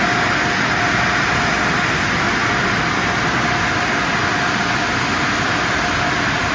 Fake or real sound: real